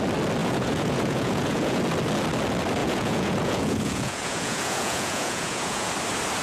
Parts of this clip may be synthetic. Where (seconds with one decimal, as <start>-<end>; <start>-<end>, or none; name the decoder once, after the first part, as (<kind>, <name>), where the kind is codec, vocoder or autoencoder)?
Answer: 0.4-1.8 (vocoder, Vocos); 2.8-5.9